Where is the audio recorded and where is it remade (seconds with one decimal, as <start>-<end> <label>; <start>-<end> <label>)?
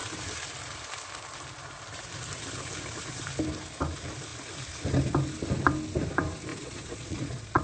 0.0-6.5 recorded; 6.5-7.6 remade